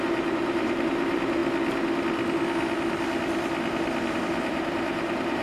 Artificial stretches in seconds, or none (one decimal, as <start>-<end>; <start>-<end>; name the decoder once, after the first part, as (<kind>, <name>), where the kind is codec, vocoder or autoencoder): 0.0-1.4 (vocoder, BigVGAN v2); 4.1-5.4